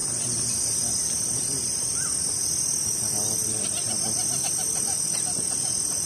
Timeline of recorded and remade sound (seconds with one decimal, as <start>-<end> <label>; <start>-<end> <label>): 0.0-2.2 remade; 2.2-6.1 recorded